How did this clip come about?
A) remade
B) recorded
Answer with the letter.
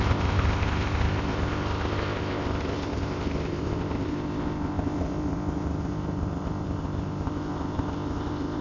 A